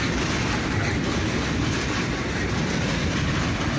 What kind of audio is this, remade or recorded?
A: recorded